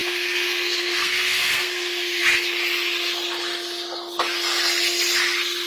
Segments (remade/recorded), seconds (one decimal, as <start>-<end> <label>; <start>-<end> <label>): 0.0-2.2 remade; 2.2-5.7 recorded